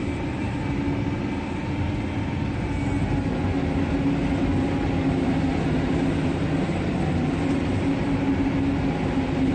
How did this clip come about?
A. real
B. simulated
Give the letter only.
A